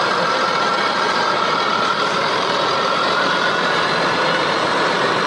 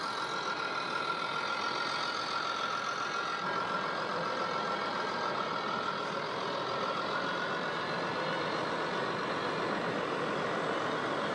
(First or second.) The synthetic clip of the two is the first